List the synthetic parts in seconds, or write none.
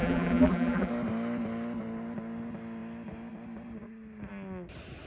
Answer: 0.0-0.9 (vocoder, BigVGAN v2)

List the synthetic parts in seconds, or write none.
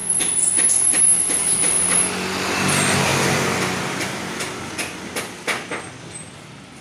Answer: none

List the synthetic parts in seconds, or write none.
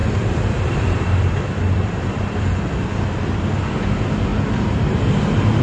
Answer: 0.0-2.7 (vocoder, BigVGAN v2)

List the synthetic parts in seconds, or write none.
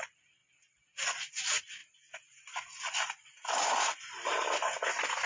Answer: 1.8-3.5 (vocoder, BigVGAN v2)